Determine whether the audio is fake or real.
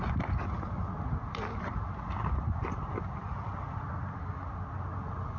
real